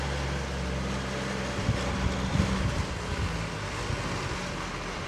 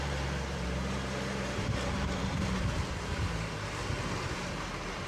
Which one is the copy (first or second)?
second